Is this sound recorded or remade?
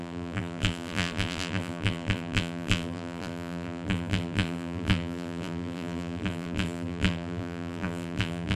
remade